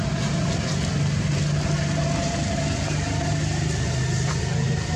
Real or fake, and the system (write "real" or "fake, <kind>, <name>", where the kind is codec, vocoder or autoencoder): real